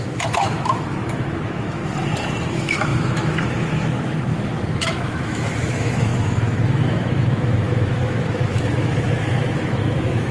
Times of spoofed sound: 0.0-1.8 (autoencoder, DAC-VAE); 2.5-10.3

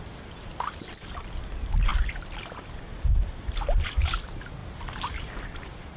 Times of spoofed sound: none

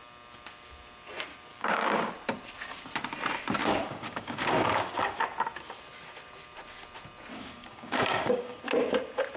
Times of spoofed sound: 1.5-2.1 (codec, DAC); 3.6-5.2; 7.3-8.6

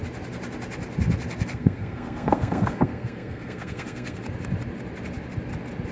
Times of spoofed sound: 1.5-4.2 (codec, SNAC)

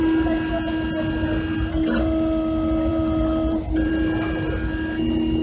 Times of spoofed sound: 2.9-3.9 (vocoder, BigVGAN v2)